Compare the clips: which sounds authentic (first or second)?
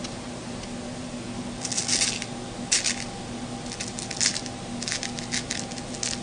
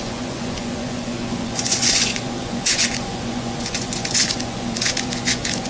first